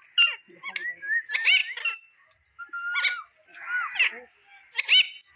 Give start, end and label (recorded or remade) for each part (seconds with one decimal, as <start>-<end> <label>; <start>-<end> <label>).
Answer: 0.0-5.4 recorded